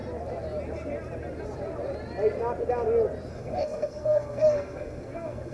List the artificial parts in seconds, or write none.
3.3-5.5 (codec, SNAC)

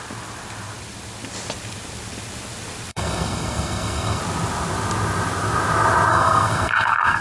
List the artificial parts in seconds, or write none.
2.9-4.2 (codec, SNAC); 6.1-7.2

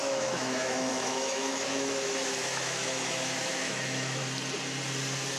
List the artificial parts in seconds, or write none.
0.0-4.2 (autoencoder, DAC-VAE)

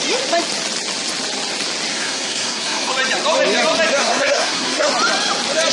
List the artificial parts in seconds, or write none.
1.9-2.9 (codec, SNAC); 4.0-4.9

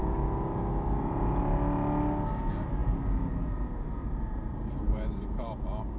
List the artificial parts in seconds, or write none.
4.0-5.6 (vocoder, BigVGAN v2)